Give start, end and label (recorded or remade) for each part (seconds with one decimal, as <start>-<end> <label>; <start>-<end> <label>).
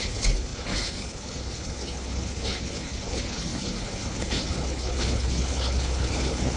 0.0-6.6 remade